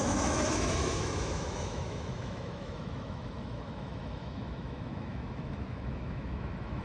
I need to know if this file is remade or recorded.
remade